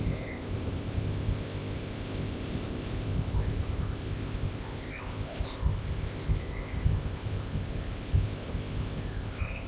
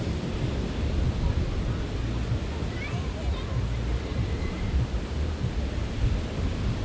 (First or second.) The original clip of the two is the second